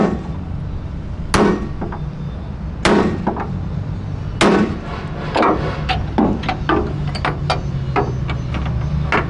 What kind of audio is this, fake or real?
real